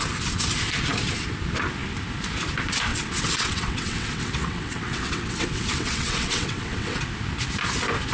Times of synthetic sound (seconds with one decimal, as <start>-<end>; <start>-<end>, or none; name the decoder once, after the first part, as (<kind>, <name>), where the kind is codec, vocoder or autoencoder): 2.9-7.0 (vocoder, WaveNeXt)